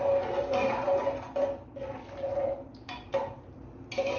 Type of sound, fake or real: real